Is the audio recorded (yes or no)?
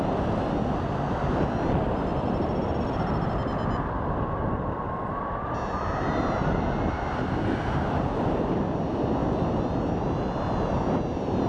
yes